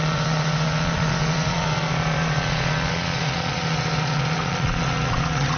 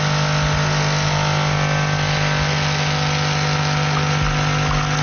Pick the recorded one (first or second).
second